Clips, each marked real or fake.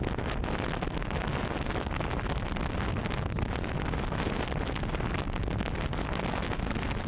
real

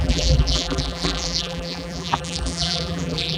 fake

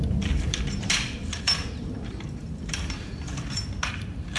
fake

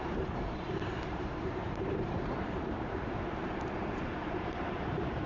fake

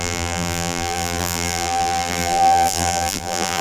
fake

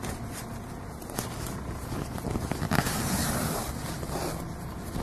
real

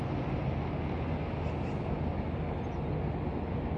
real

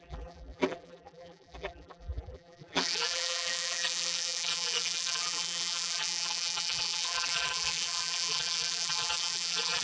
fake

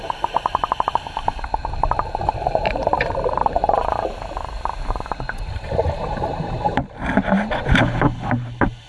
fake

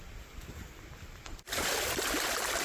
fake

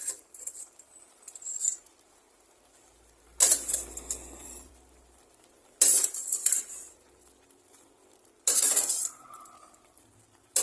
fake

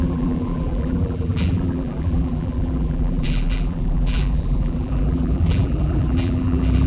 fake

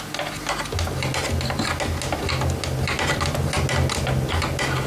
real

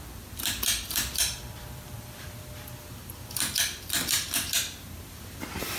fake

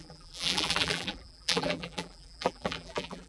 fake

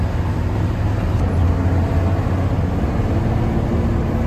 real